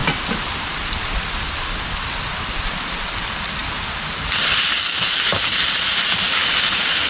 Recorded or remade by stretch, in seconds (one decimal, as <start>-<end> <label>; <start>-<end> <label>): 0.0-7.1 recorded